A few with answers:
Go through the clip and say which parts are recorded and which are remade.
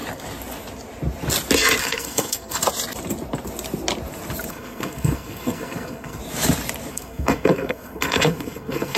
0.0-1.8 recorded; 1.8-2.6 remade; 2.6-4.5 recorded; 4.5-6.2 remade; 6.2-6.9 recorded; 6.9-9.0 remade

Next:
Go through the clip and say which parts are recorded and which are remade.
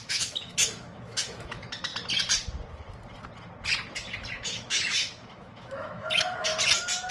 0.0-1.9 remade; 1.9-4.3 recorded; 4.3-6.5 remade; 6.5-7.1 recorded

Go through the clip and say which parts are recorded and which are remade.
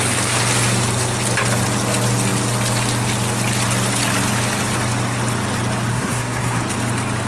0.0-5.9 recorded; 5.9-6.6 remade; 6.6-7.3 recorded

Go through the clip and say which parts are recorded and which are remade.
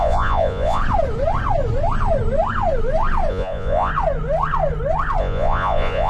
0.0-0.8 remade; 0.8-3.3 recorded; 3.3-3.9 remade; 3.9-5.2 recorded; 5.2-6.1 remade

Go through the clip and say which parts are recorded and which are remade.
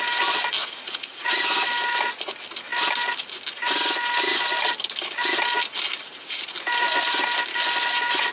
0.0-0.6 recorded; 0.6-1.4 remade; 1.4-8.3 recorded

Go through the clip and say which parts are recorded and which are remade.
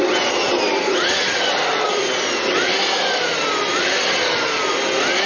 0.0-5.3 recorded